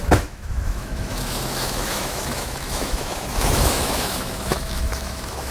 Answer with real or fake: fake